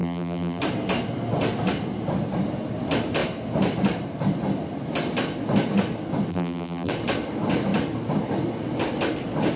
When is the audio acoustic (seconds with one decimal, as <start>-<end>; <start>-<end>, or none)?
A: 0.6-6.3; 6.9-9.6